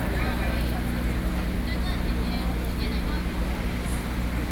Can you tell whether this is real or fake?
real